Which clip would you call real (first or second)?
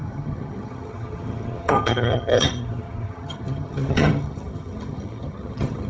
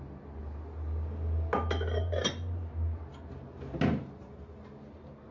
second